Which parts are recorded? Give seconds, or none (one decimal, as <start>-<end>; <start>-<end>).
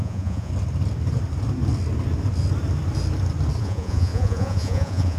0.5-3.6